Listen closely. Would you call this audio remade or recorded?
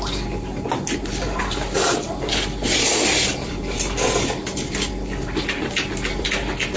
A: recorded